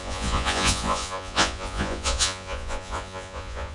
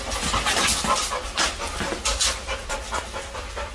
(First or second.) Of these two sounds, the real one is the second